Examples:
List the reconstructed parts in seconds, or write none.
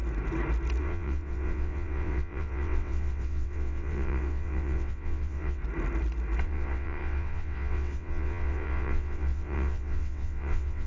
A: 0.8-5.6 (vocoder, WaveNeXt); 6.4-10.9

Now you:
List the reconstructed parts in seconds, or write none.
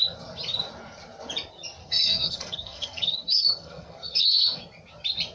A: 1.8-4.6 (codec, SNAC)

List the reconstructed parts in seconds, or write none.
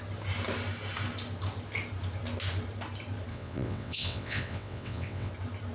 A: 3.3-5.3 (vocoder, WaveNeXt)